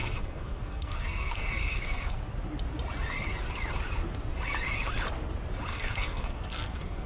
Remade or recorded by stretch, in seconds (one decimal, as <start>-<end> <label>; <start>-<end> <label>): 0.0-2.2 remade; 2.2-5.7 recorded; 5.7-7.1 remade